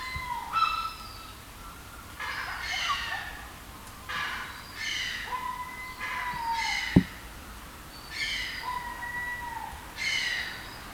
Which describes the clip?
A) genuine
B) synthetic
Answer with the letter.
A